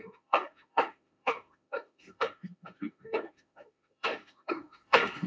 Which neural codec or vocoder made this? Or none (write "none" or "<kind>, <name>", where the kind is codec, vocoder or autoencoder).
autoencoder, DAC-VAE